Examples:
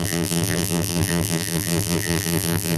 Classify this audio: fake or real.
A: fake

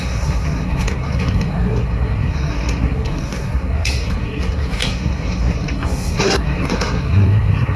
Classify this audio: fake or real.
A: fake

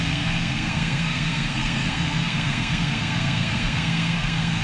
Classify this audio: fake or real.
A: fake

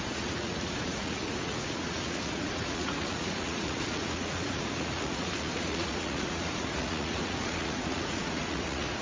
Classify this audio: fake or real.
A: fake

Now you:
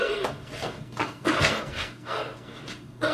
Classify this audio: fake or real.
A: fake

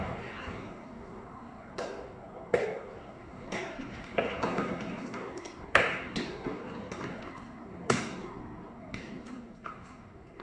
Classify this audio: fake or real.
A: fake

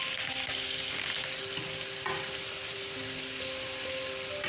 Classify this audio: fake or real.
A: real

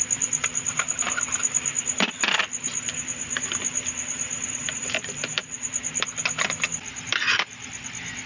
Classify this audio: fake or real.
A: fake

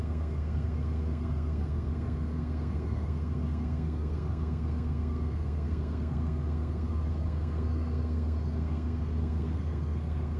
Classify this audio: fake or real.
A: fake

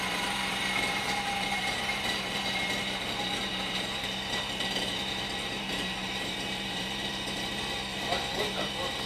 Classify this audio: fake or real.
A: fake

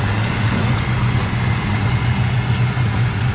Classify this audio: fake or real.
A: fake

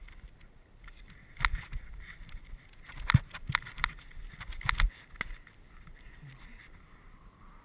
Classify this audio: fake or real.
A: real